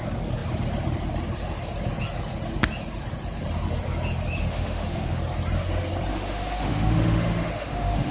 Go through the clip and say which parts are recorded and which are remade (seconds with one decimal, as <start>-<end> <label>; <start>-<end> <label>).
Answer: 0.0-4.4 recorded; 4.4-5.2 remade; 5.2-6.1 recorded; 6.1-8.1 remade